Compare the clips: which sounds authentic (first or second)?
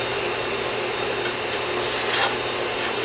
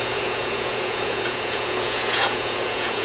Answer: first